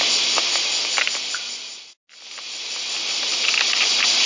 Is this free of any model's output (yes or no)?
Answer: yes